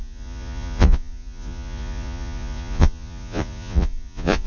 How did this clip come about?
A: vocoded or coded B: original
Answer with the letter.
A